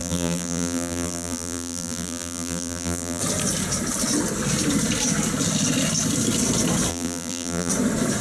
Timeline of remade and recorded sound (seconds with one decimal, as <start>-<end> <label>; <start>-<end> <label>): 0.0-3.2 remade; 3.2-6.9 recorded; 6.9-7.7 remade; 7.7-8.2 recorded